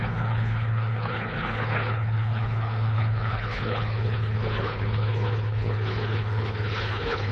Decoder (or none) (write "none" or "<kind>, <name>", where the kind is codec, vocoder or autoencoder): codec, HILCodec